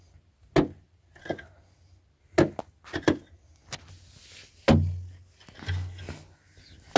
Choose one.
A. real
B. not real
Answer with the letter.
A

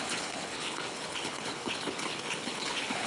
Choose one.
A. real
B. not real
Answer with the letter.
B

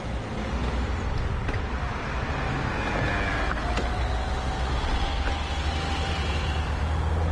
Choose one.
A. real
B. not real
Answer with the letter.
A